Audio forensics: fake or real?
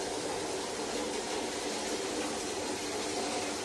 real